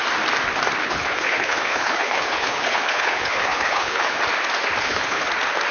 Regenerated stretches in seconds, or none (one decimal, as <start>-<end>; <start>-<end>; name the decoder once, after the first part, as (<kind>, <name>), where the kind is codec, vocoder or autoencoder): 0.8-4.2 (codec, HILCodec); 4.8-5.3